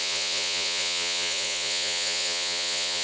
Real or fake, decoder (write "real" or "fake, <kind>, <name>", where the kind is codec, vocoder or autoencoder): fake, vocoder, Vocos